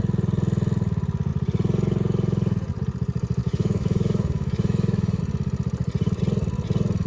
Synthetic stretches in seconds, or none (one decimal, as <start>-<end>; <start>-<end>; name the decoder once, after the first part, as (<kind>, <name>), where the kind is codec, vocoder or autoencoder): 3.4-5.2 (autoencoder, DAC-VAE)